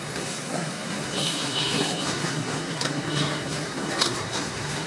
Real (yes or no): no